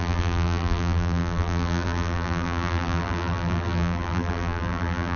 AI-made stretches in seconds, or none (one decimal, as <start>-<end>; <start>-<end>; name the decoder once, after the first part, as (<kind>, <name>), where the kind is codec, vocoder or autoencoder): 0.0-5.2 (vocoder, BigVGAN v2)